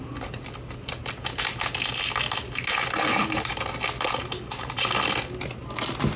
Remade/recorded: recorded